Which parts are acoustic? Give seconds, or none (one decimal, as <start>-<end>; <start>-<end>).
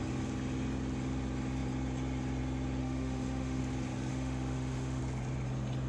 0.0-2.8; 3.6-4.1; 5.0-5.9